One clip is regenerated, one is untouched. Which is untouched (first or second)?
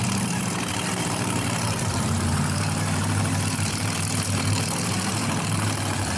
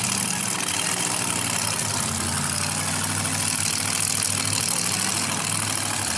second